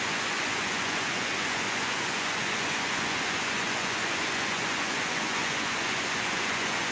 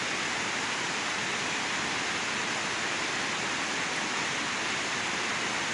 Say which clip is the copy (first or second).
first